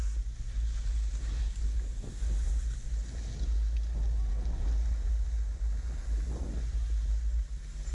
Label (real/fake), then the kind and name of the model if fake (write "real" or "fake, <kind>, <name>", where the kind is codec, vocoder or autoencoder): real